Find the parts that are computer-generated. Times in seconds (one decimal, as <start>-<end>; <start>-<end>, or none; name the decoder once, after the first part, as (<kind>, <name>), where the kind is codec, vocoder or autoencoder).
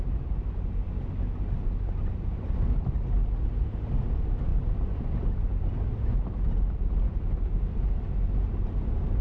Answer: none